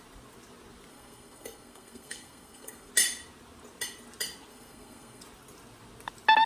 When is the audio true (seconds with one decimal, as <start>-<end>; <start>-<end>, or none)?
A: 0.0-0.9; 2.9-4.5; 5.2-6.5